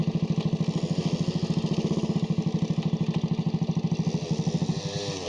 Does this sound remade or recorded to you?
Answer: recorded